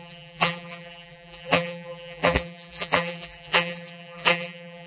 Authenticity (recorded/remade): remade